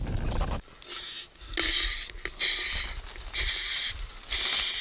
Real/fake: real